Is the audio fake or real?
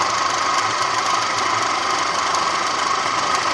real